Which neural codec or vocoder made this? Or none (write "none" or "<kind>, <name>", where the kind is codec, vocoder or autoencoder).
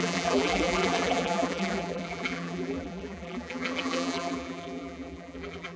vocoder, BigVGAN v2